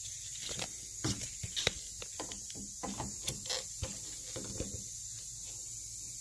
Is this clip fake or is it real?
real